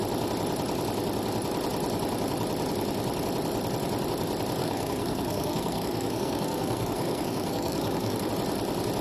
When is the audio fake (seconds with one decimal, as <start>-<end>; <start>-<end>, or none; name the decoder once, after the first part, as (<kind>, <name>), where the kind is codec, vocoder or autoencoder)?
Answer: 4.6-8.3 (codec, SNAC)